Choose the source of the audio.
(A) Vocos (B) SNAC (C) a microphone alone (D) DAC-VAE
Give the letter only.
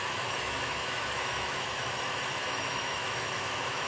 D